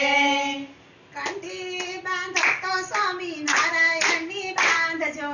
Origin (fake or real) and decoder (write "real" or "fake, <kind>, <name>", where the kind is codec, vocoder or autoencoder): real